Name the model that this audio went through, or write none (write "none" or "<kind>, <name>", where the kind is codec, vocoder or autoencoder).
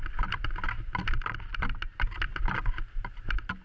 none